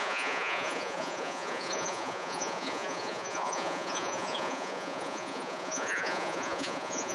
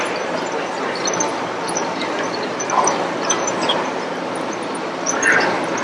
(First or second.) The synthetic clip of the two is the first